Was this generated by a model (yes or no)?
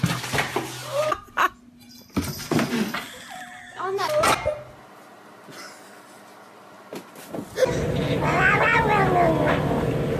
no